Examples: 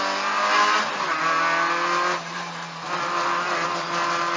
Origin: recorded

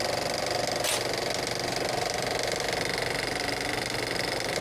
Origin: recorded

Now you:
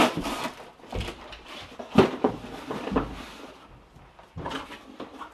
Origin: recorded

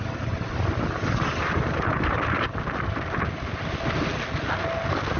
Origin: recorded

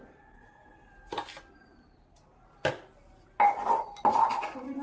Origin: recorded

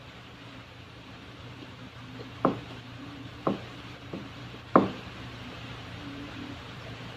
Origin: remade